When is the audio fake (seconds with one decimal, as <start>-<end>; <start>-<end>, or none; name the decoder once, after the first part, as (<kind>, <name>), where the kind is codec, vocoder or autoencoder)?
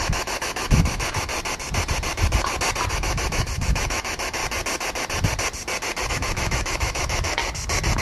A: 0.0-1.3 (autoencoder, DAC-VAE); 2.9-4.4; 6.1-7.4